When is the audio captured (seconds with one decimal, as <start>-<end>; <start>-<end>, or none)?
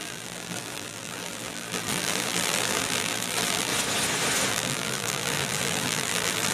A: 3.7-4.5